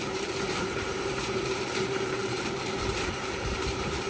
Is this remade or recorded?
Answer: remade